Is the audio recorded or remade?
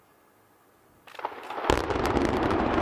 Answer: recorded